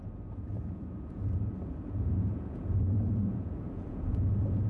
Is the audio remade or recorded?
remade